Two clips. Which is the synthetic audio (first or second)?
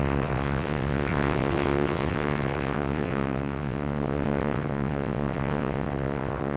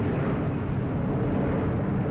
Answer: first